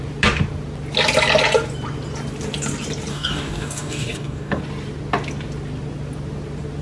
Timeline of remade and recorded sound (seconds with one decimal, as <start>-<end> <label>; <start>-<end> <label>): 0.0-3.1 recorded; 3.1-4.6 remade; 4.6-6.8 recorded